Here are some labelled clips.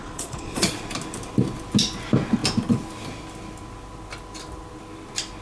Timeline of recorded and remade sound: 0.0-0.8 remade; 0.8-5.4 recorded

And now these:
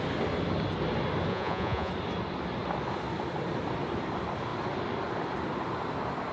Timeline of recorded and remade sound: 0.0-1.3 recorded; 1.3-1.9 remade; 1.9-6.3 recorded

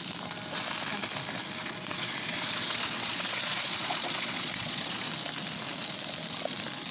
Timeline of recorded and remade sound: 0.0-1.6 recorded; 1.6-5.1 remade; 5.1-6.9 recorded